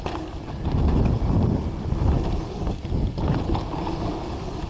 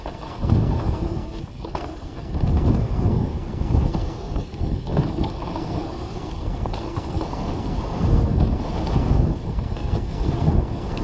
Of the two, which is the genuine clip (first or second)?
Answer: first